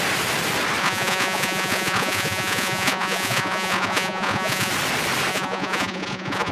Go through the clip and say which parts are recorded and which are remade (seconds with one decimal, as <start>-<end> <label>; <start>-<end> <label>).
0.0-0.8 recorded; 0.8-4.7 remade; 4.7-5.3 recorded; 5.3-6.5 remade

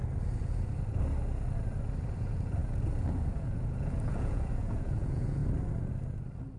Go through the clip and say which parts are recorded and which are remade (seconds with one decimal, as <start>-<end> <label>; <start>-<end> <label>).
0.0-2.2 recorded; 2.2-5.4 remade; 5.4-6.6 recorded

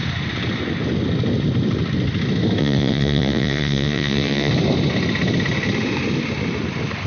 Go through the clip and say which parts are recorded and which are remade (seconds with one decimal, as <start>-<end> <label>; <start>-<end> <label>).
0.0-2.6 recorded; 2.6-4.5 remade; 4.5-7.1 recorded

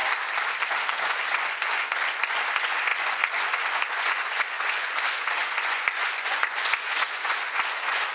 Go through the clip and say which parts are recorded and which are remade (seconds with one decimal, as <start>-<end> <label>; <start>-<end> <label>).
0.0-0.9 recorded; 0.9-8.1 remade

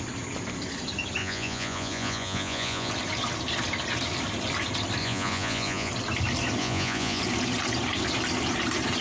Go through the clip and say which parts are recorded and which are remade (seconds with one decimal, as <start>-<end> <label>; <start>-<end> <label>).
0.0-1.2 recorded; 1.2-2.9 remade; 2.9-5.0 recorded; 5.0-5.9 remade; 5.9-6.6 recorded; 6.6-7.2 remade; 7.2-9.0 recorded

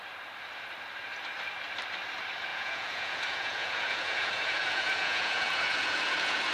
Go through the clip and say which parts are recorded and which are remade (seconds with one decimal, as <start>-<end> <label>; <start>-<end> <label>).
0.0-2.5 recorded; 2.5-6.5 remade

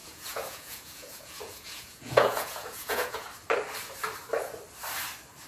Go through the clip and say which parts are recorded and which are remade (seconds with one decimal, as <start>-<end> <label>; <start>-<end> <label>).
0.0-3.3 remade; 3.3-5.5 recorded